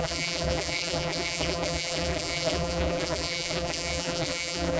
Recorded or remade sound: remade